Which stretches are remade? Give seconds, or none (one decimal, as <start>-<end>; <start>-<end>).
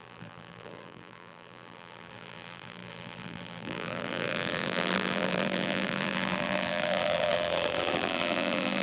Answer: 0.0-8.8